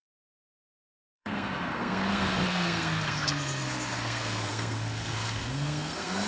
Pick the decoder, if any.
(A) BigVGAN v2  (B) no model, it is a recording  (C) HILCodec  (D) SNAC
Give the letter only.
D